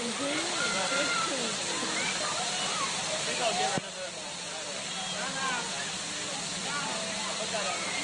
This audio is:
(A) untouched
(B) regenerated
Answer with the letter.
A